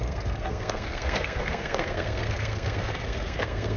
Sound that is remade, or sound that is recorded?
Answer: remade